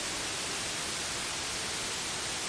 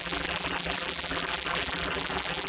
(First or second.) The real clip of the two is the first